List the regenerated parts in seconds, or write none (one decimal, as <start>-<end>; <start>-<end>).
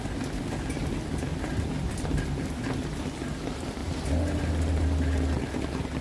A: 3.8-4.5